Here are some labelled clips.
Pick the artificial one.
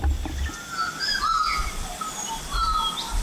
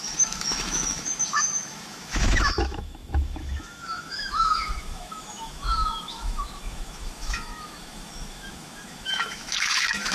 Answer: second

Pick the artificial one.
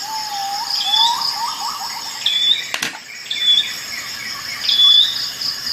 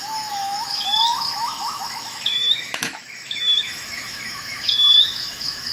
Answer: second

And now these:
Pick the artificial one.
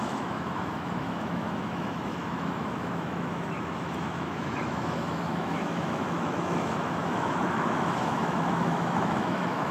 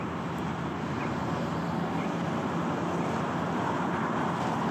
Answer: first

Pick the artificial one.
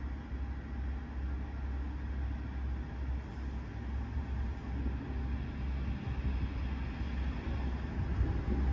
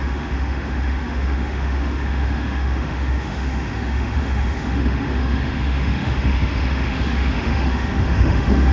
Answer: second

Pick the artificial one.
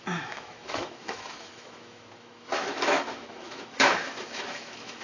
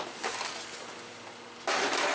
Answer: first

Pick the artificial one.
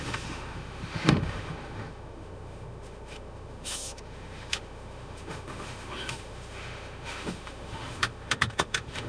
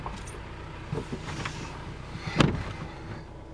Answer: first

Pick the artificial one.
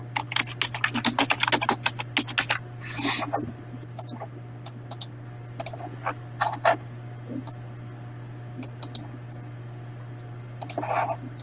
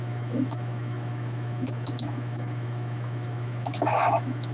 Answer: second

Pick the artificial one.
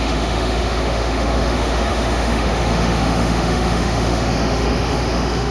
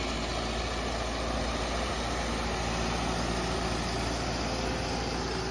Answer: first